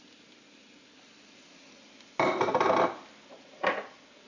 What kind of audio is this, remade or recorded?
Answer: recorded